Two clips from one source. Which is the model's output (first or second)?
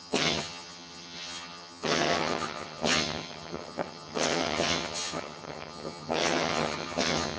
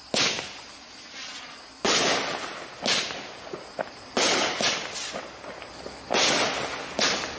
first